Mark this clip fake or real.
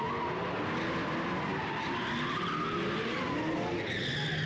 real